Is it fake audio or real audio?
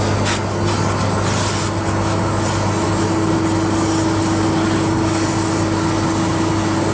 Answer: real